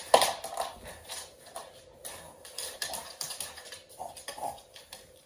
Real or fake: real